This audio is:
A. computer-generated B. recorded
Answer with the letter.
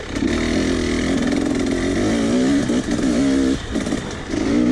B